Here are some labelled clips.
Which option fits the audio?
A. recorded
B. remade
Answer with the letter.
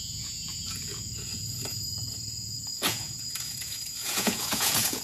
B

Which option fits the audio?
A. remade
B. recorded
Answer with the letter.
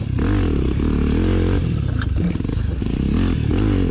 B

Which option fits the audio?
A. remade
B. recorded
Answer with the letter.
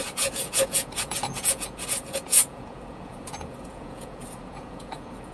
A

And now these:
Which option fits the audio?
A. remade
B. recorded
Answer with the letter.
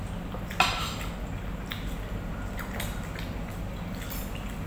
B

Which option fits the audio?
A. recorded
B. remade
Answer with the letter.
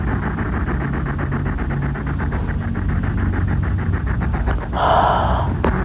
A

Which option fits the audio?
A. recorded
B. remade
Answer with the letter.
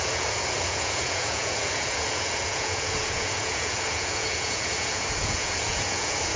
B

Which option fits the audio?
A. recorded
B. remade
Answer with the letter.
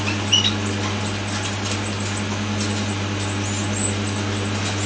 A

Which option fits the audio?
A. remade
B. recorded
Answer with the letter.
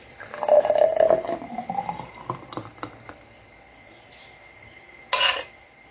B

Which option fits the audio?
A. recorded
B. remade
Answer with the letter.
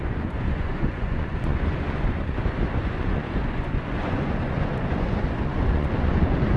B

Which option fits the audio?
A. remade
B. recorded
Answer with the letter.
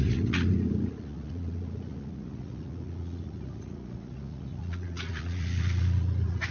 A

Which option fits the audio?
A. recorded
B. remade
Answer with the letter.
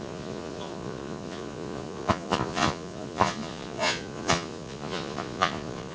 B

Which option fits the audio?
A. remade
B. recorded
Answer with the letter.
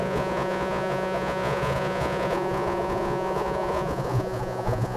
A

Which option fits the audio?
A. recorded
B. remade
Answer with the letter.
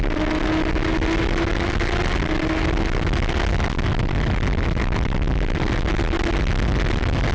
A